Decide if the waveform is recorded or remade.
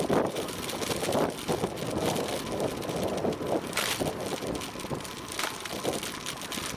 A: recorded